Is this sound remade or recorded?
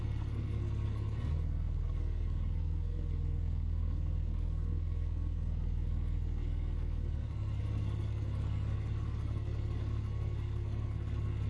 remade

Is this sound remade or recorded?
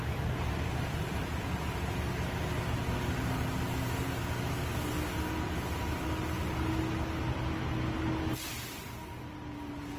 recorded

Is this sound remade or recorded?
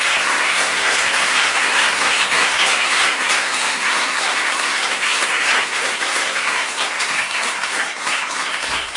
remade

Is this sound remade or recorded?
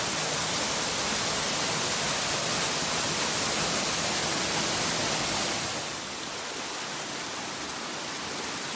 recorded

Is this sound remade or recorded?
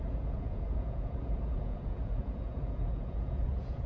remade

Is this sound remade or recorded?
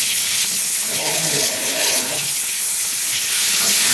remade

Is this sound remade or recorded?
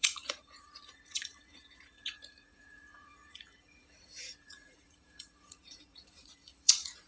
remade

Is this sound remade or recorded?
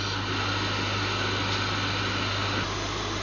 recorded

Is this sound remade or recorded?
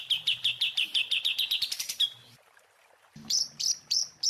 remade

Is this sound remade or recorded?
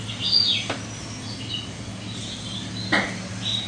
recorded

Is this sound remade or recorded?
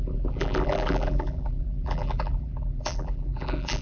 remade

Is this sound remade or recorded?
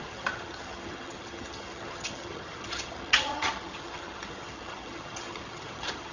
remade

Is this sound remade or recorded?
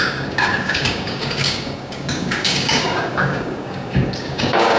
remade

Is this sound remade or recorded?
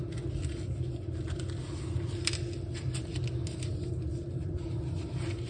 recorded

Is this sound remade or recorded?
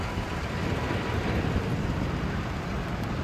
recorded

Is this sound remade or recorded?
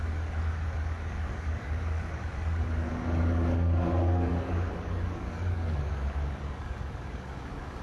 remade